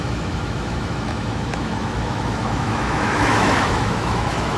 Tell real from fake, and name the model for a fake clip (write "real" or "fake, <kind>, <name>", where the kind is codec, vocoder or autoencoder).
fake, autoencoder, DAC-VAE